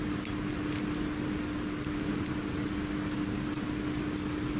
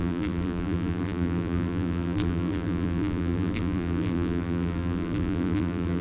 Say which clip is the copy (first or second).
second